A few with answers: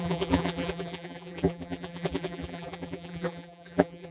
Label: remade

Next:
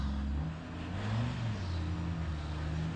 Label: recorded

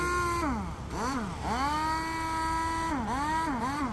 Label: recorded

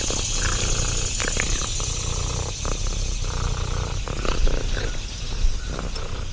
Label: recorded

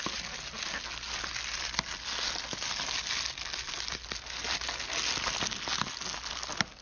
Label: recorded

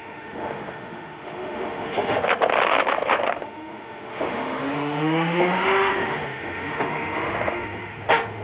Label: remade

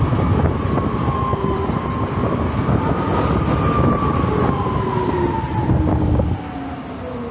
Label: recorded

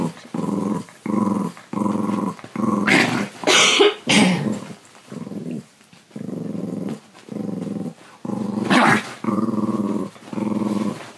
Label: remade